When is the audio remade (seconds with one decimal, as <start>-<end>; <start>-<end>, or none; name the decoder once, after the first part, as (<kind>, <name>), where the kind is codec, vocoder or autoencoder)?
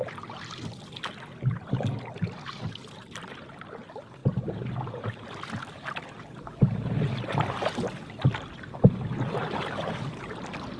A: none